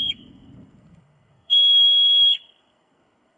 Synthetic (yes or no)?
yes